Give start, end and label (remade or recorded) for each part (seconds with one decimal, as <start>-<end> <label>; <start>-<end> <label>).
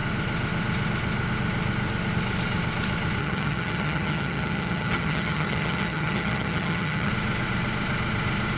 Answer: 0.0-3.2 recorded; 3.2-7.1 remade; 7.1-8.6 recorded